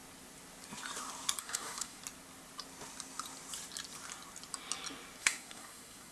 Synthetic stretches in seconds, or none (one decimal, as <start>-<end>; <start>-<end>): 1.4-2.0; 5.2-6.1